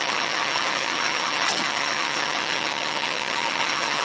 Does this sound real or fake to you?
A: fake